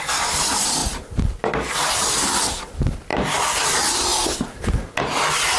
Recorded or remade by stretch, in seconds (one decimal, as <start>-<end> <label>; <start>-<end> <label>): 0.0-5.6 recorded